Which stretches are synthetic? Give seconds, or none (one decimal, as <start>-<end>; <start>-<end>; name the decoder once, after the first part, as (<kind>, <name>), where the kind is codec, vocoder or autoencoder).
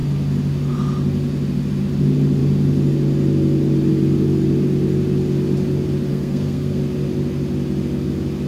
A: 6.1-6.8 (codec, SNAC)